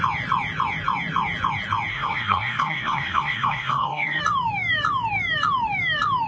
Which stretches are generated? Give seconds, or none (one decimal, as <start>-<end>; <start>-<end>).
1.9-4.2